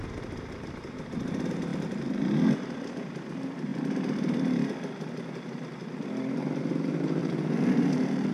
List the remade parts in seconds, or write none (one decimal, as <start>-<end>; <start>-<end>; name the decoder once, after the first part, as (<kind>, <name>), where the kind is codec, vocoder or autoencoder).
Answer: 0.0-1.7 (vocoder, BigVGAN v2); 3.3-3.7; 6.4-8.3